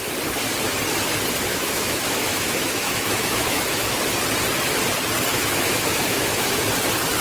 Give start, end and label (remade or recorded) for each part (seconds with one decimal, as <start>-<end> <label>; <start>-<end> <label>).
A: 0.0-1.5 recorded; 1.5-3.9 remade; 3.9-5.3 recorded; 5.3-6.6 remade; 6.6-7.2 recorded